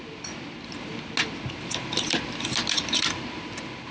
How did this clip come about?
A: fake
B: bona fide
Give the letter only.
B